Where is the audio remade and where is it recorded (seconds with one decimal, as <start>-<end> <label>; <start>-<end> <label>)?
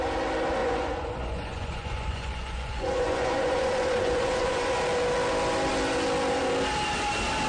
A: 0.0-0.6 recorded; 0.6-4.7 remade; 4.7-7.5 recorded